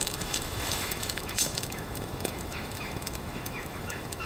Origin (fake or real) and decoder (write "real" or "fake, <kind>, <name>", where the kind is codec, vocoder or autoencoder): fake, autoencoder, DAC-VAE